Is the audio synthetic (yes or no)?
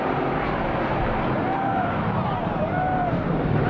yes